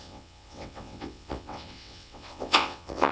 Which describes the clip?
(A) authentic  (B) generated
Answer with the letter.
B